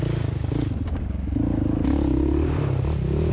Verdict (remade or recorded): recorded